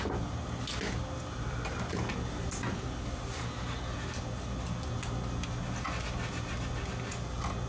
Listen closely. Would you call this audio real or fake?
real